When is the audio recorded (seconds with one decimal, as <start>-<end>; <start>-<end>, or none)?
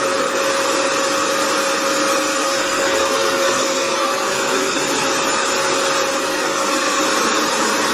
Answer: 0.0-2.3; 4.8-6.2; 7.0-7.9